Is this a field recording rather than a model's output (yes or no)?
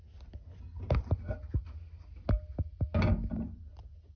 yes